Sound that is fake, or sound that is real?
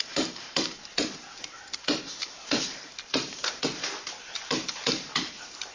fake